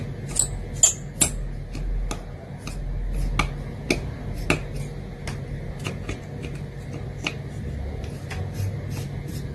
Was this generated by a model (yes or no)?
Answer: no